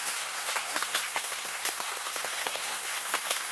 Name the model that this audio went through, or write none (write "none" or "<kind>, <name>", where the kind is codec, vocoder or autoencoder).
codec, SNAC